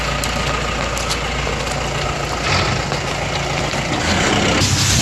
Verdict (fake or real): real